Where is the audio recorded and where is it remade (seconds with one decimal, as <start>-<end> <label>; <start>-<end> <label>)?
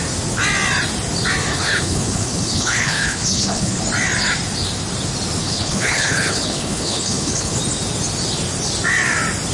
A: 0.0-1.5 recorded; 1.5-3.8 remade; 3.8-5.4 recorded; 5.4-7.6 remade; 7.6-9.5 recorded